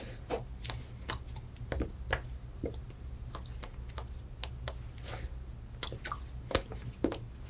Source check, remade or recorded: recorded